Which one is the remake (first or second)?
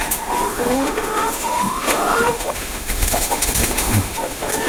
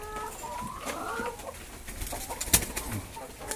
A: first